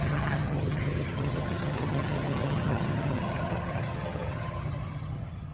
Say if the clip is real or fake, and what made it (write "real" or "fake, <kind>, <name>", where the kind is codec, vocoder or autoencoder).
fake, vocoder, HiFi-GAN